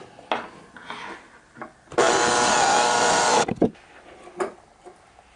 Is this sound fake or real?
real